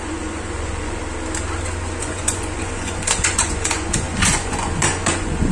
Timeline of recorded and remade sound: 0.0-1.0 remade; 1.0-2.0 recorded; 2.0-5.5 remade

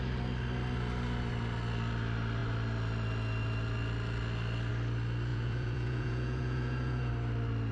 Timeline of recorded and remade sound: 0.0-5.3 recorded; 5.3-7.1 remade; 7.1-7.7 recorded

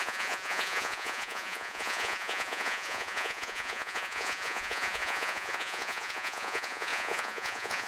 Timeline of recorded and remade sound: 0.0-7.9 remade